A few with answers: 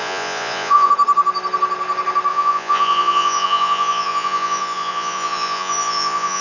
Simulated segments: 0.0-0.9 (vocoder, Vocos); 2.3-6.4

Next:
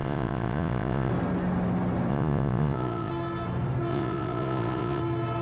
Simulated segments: 0.0-1.1 (vocoder, Vocos); 2.1-3.1; 3.9-5.0

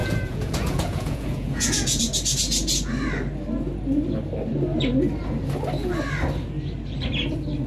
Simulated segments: 0.0-2.0 (vocoder, Vocos)